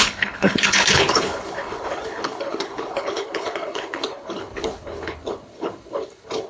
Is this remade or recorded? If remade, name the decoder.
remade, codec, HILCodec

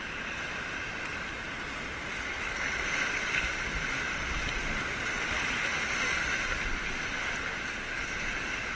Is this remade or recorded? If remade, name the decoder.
recorded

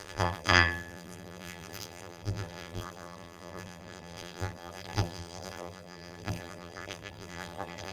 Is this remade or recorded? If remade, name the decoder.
remade, vocoder, BigVGAN v2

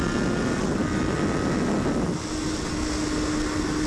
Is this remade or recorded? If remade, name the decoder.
recorded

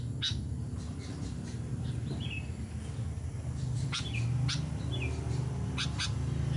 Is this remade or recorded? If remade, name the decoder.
recorded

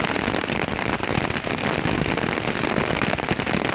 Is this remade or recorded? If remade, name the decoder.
recorded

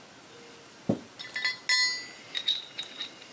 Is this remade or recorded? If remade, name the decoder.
recorded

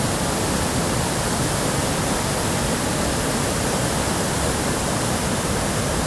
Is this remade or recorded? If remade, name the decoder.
remade, vocoder, BigVGAN v2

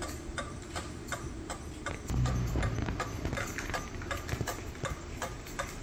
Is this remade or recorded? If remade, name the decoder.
recorded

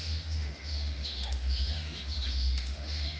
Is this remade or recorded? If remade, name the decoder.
remade, autoencoder, DAC-VAE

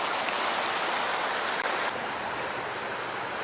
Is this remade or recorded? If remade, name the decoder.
recorded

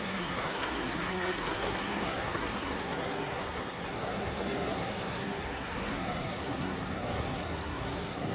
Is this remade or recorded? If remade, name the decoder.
remade, codec, SNAC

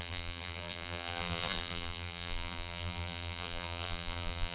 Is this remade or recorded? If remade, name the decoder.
remade, vocoder, BigVGAN v2